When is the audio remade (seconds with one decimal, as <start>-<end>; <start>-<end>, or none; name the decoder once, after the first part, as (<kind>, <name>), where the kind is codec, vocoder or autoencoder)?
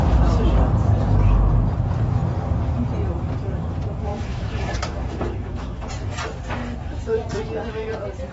4.1-5.9 (autoencoder, DAC-VAE)